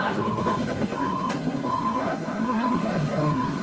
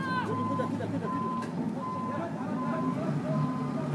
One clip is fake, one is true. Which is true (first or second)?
second